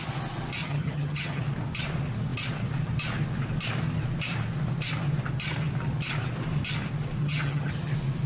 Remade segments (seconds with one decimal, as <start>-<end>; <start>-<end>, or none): 0.6-1.4; 7.2-7.9